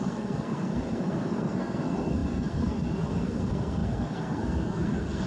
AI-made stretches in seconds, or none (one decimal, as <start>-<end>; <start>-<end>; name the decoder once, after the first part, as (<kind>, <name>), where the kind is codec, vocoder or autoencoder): 0.0-5.3 (codec, SNAC)